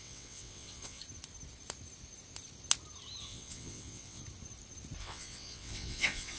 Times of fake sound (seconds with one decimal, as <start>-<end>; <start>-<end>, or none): 0.0-1.0; 3.2-4.2; 5.0-6.4

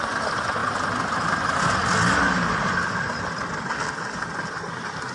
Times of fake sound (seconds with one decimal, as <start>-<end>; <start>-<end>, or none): none

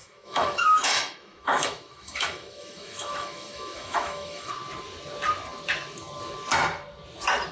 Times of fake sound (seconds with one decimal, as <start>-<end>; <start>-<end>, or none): 0.0-4.5

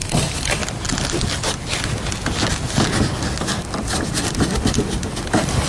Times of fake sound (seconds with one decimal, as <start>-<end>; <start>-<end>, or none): 0.0-0.6; 3.6-5.7

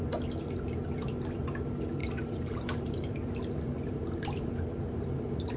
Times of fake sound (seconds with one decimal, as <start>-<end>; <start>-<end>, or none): 2.0-5.6

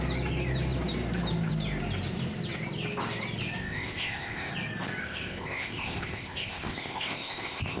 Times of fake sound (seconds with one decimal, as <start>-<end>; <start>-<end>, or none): 3.6-4.5; 5.0-7.8